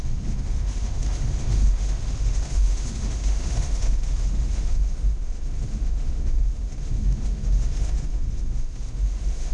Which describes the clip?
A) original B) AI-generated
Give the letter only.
B